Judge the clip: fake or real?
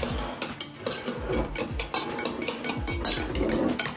real